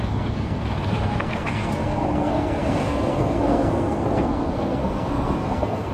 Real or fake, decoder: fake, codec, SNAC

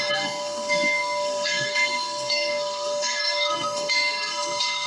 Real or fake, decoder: fake, codec, SNAC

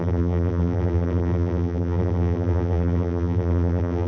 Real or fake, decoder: fake, vocoder, BigVGAN v2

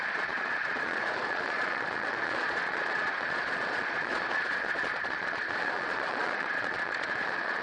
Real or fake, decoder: fake, vocoder, Vocos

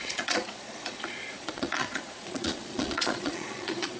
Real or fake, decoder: fake, vocoder, Vocos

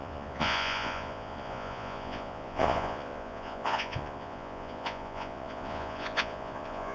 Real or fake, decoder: fake, vocoder, Vocos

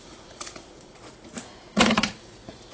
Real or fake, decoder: fake, vocoder, Vocos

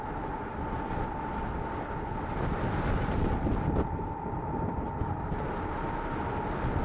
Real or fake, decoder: real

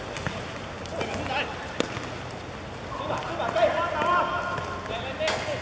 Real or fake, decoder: real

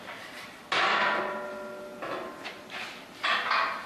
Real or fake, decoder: real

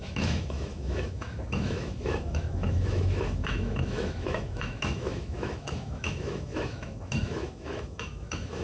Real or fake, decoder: fake, autoencoder, DAC-VAE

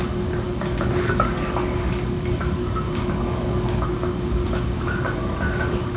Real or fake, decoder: fake, codec, DAC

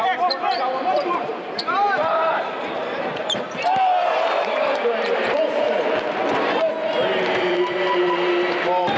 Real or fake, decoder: fake, vocoder, BigVGAN v2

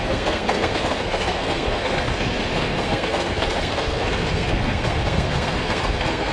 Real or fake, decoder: fake, codec, SNAC